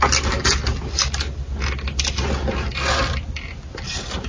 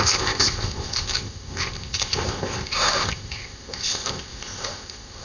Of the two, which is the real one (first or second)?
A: first